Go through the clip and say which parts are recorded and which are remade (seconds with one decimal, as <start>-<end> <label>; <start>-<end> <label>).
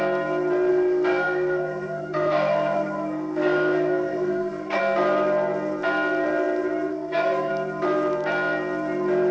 0.0-0.7 recorded; 0.7-4.8 remade; 4.8-6.9 recorded; 6.9-7.5 remade; 7.5-9.3 recorded